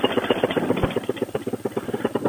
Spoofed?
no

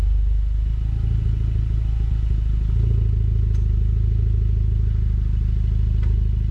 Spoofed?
no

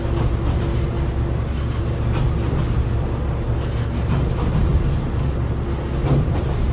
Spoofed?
no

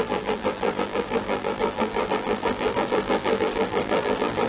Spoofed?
yes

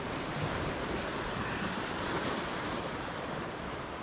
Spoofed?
no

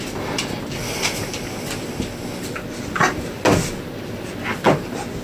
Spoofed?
no